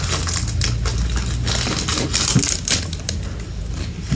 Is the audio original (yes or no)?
yes